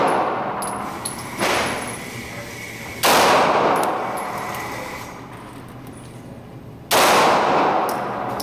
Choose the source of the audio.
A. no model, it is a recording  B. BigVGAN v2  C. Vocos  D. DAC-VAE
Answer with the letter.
A